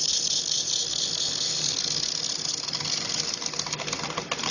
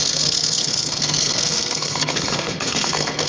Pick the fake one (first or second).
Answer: second